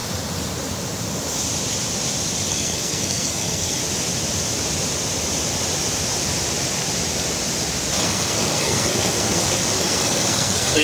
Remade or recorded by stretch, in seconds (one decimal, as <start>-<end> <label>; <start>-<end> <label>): 0.0-2.5 recorded; 2.5-3.8 remade; 3.8-8.0 recorded; 8.0-10.8 remade